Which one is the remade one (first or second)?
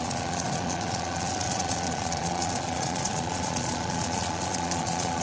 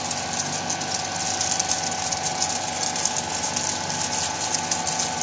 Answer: first